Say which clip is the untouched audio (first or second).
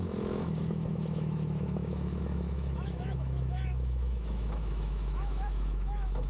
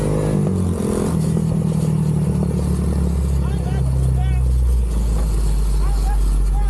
second